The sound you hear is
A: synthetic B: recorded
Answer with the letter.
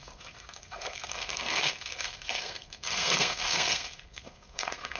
A